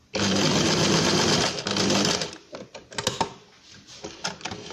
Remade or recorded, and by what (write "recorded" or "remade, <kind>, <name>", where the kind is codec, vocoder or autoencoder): recorded